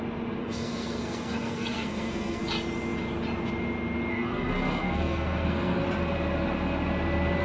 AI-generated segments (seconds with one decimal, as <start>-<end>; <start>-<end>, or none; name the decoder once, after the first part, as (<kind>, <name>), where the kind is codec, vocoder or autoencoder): 0.4-2.4 (codec, SNAC); 4.1-5.8